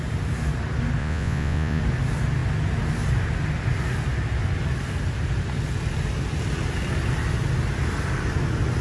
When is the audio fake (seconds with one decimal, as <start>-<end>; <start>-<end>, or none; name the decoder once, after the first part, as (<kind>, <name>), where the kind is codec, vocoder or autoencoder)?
1.0-1.8 (vocoder, Vocos)